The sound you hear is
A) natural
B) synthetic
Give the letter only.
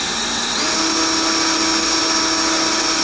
A